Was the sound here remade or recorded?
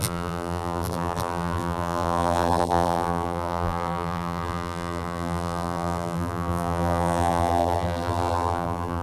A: remade